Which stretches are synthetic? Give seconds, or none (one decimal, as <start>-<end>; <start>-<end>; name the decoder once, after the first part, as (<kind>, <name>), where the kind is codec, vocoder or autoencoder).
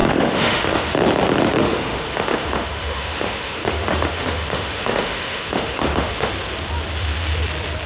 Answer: 0.0-0.9 (autoencoder, DAC-VAE); 1.6-6.3